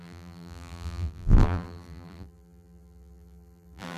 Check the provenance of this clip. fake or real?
fake